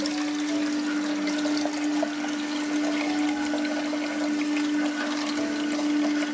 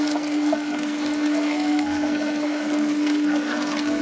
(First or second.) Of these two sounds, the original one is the first